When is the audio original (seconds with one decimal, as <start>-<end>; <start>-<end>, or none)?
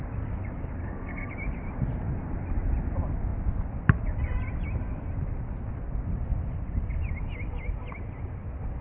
0.0-0.8; 1.3-8.8